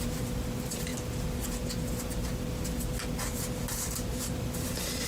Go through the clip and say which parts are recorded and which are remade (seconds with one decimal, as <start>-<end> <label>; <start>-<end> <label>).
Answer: 0.0-0.9 remade; 0.9-3.2 recorded; 3.2-5.1 remade